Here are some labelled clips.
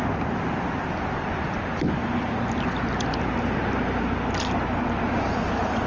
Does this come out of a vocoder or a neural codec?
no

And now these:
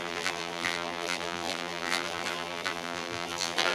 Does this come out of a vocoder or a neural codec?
yes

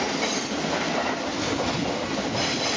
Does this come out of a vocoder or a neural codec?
no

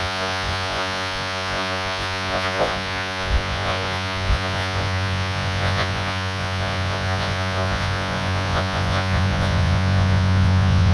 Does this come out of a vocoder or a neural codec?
yes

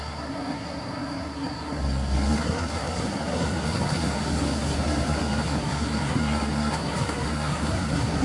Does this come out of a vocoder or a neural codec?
yes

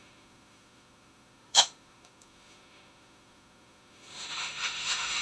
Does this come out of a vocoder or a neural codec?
yes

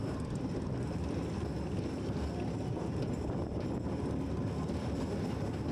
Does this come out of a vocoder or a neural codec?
no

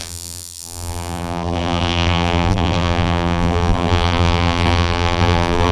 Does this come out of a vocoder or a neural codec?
yes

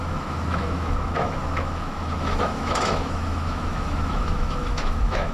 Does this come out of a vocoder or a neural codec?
yes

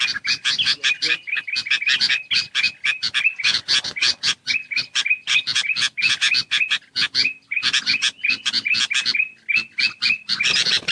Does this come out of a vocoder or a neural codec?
no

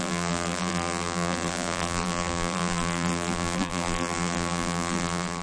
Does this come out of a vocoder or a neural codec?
yes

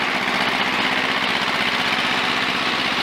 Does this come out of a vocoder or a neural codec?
no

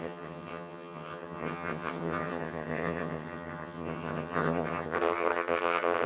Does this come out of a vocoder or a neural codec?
yes